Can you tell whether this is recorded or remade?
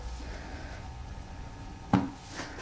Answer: remade